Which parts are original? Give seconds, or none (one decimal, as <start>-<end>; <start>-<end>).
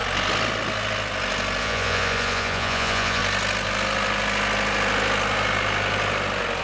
0.0-1.6; 3.2-6.6